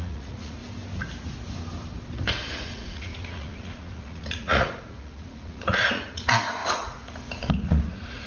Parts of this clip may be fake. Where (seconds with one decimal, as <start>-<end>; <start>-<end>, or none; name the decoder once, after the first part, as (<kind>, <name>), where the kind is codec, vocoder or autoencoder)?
0.0-0.6 (vocoder, Vocos); 2.2-8.3